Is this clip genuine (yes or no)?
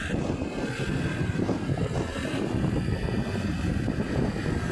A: no